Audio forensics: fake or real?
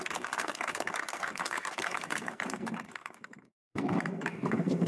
fake